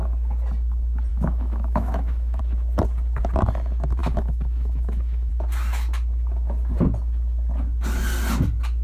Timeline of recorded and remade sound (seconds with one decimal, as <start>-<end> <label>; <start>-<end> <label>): 0.0-1.1 recorded; 1.1-2.4 remade; 2.4-4.0 recorded; 4.0-5.3 remade; 5.3-8.8 recorded